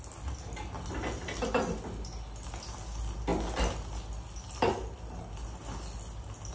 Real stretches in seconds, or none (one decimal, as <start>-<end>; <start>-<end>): 0.0-6.5